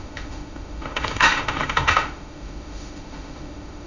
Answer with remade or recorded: remade